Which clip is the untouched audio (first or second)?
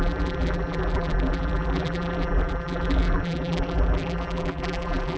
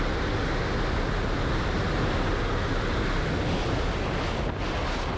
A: second